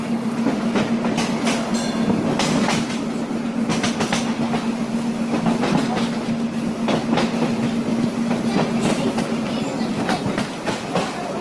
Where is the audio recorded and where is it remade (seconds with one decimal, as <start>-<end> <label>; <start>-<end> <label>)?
0.0-11.4 recorded